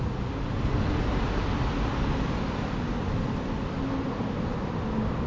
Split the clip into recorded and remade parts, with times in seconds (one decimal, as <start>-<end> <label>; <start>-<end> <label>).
0.0-5.3 recorded